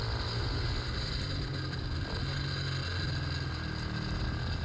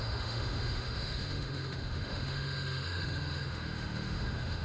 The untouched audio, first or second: first